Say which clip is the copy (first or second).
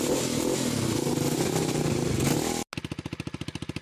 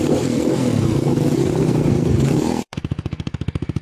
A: second